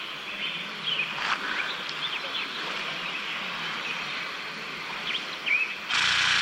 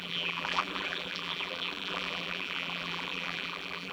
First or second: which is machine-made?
second